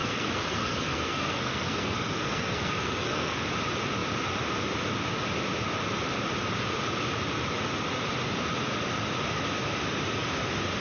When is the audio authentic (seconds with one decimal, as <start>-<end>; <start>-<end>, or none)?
3.4-10.8